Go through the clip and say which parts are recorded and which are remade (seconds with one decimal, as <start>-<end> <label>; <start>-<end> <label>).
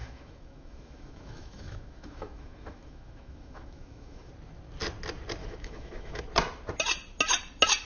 0.0-4.3 remade; 4.3-5.4 recorded; 5.4-6.2 remade; 6.2-7.8 recorded